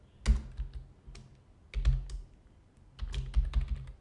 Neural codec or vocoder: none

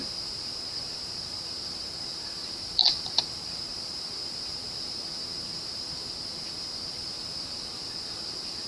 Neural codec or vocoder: vocoder, BigVGAN v2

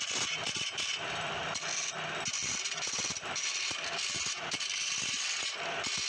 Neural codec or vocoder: none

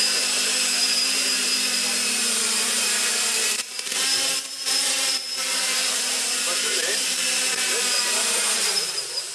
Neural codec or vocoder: vocoder, BigVGAN v2